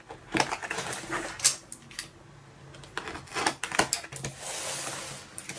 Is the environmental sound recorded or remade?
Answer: recorded